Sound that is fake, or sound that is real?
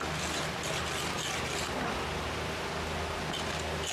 real